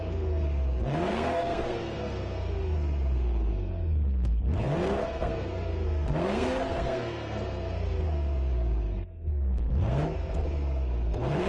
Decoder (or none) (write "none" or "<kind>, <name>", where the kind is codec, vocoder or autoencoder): codec, SNAC